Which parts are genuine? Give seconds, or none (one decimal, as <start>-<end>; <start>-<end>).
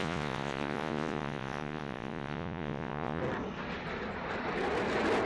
3.2-5.3